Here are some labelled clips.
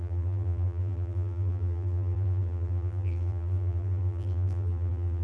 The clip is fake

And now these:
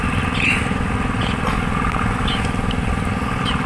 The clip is real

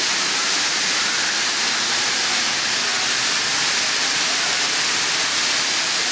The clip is real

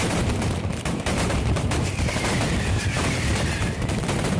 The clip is fake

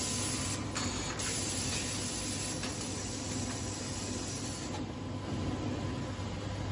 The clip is real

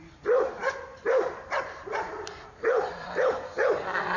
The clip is fake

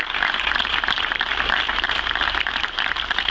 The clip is fake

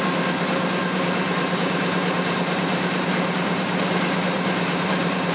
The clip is fake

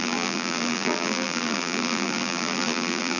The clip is fake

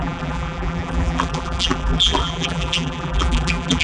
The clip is fake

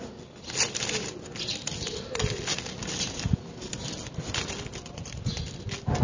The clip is real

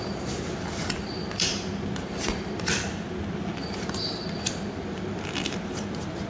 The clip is real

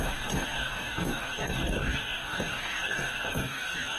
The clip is fake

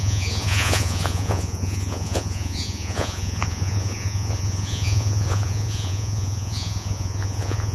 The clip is fake